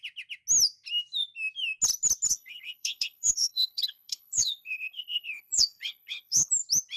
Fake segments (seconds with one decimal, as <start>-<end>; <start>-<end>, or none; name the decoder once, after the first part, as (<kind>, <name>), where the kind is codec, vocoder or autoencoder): 2.3-6.5 (codec, HILCodec)